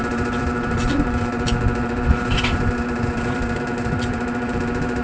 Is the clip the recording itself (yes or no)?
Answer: no